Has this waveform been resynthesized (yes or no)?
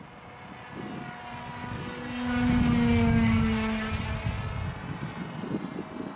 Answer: no